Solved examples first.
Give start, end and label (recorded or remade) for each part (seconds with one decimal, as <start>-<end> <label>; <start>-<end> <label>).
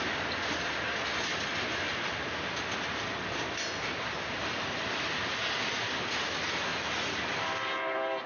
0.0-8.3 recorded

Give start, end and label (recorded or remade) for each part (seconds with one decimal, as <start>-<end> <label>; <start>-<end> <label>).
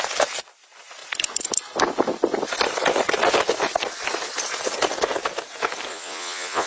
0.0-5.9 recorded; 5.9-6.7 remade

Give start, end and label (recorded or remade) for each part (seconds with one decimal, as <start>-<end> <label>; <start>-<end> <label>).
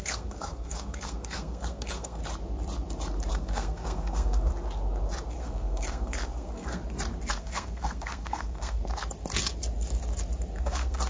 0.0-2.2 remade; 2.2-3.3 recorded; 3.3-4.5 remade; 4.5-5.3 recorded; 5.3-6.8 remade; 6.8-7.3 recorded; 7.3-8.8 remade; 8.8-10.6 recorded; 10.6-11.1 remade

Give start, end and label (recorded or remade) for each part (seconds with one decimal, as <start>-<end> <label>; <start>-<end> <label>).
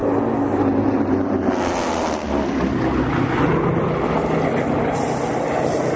0.0-6.0 recorded